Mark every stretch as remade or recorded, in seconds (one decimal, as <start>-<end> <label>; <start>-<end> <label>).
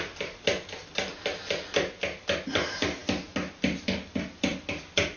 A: 0.0-5.2 recorded